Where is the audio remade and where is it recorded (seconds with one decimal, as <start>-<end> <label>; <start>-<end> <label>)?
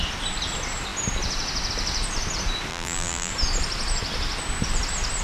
0.0-2.7 recorded; 2.7-3.3 remade; 3.3-5.2 recorded